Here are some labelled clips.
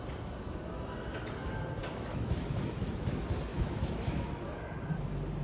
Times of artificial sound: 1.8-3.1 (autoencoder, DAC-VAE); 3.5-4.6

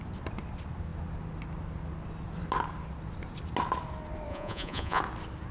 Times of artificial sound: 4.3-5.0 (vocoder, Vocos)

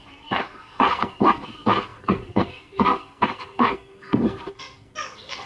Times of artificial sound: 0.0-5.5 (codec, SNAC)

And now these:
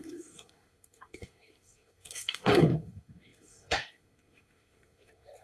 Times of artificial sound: 0.0-5.4 (codec, SNAC)

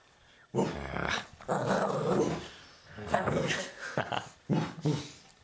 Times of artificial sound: 2.8-4.0 (codec, SNAC)

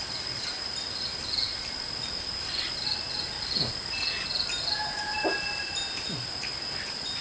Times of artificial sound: 0.0-1.5 (vocoder, BigVGAN v2); 2.1-7.2

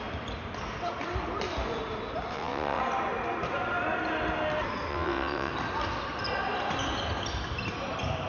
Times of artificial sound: 2.3-2.8 (vocoder, WaveNeXt); 4.9-5.5